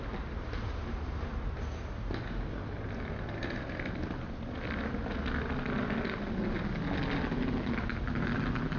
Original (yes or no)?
yes